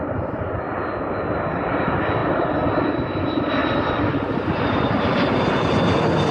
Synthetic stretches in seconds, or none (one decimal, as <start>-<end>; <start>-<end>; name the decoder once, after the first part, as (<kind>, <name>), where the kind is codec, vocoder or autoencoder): 0.0-6.3 (vocoder, BigVGAN v2)